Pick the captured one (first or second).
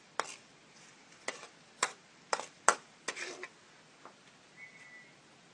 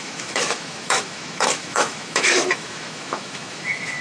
first